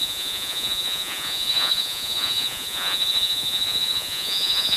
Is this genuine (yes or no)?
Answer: no